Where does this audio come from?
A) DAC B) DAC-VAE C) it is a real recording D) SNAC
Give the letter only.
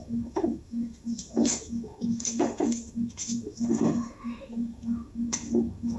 B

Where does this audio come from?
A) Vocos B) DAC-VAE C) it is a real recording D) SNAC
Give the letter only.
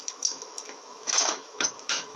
B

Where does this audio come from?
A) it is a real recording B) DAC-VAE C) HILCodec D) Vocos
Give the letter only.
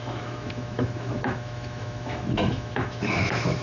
B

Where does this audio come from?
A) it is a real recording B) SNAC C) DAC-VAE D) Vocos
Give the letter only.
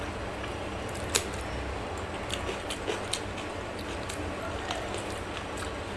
A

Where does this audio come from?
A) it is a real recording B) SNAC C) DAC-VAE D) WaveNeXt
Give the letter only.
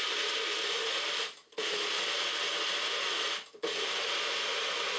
A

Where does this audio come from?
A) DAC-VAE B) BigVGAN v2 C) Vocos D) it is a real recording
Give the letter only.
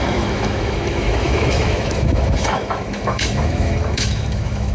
A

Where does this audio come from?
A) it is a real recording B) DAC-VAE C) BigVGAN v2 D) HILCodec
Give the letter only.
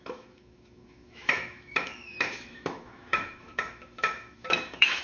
B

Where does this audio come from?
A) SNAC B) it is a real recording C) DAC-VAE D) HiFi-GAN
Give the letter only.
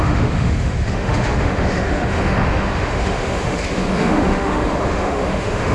C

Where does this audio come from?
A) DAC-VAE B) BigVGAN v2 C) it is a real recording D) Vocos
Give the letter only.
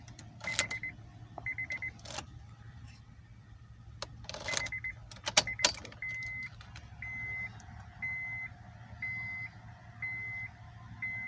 C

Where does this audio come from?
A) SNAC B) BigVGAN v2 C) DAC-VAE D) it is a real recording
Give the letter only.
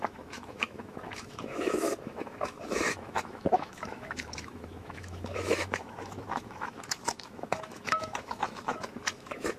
C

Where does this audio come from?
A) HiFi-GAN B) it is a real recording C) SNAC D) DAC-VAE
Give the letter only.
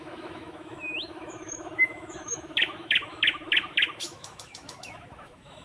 D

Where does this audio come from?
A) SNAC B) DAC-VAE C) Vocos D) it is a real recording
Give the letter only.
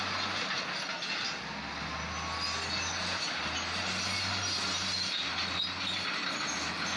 D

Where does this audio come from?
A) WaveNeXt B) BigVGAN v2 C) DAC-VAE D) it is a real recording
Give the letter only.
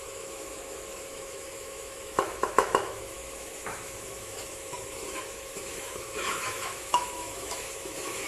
C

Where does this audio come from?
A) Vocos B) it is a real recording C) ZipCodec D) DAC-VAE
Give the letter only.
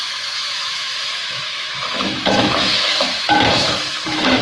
D